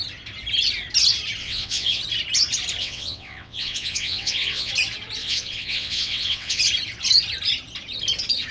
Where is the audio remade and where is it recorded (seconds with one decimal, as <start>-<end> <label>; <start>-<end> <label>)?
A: 0.0-1.4 recorded; 1.4-2.0 remade; 2.0-2.8 recorded; 2.8-4.7 remade; 4.7-5.2 recorded; 5.2-6.6 remade; 6.6-8.5 recorded